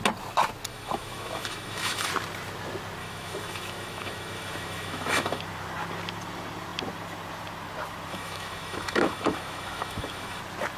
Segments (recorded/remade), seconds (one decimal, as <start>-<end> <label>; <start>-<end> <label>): 0.0-0.7 recorded; 0.7-2.1 remade; 2.1-3.0 recorded; 3.0-5.4 remade; 5.4-8.1 recorded; 8.1-10.4 remade; 10.4-10.8 recorded